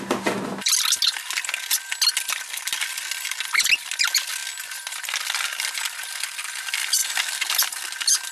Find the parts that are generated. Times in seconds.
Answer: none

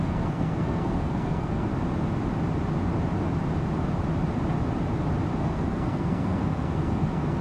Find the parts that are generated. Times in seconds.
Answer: 0.0-1.7 (codec, SNAC); 5.4-7.4

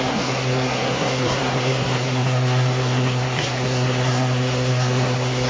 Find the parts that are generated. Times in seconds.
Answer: 0.0-5.5 (codec, SNAC)

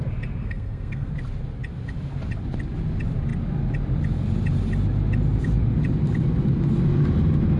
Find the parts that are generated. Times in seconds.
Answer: 0.4-1.1 (codec, SNAC)